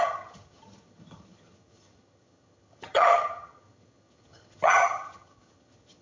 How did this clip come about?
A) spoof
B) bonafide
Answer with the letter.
A